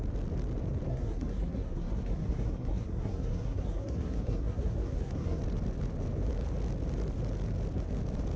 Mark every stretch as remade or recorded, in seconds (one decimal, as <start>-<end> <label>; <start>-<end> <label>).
0.0-0.9 recorded; 0.9-5.4 remade; 5.4-8.4 recorded